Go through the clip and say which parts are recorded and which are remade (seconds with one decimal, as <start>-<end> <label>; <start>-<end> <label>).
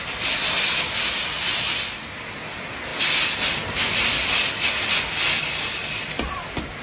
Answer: 0.0-6.8 recorded